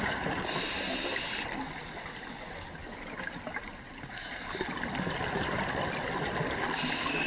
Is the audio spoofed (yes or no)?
no